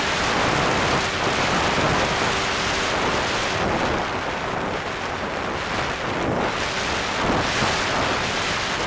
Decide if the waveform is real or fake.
real